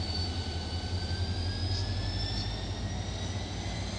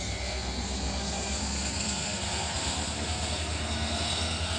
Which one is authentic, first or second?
first